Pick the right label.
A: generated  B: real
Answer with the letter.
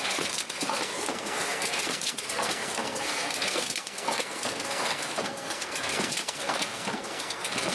A